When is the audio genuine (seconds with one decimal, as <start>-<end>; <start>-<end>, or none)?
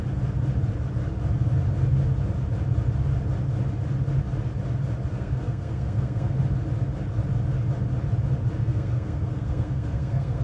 0.0-5.1; 6.4-8.6